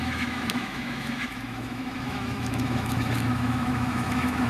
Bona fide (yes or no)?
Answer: no